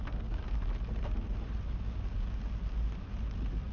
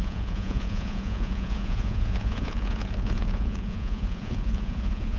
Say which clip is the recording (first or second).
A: first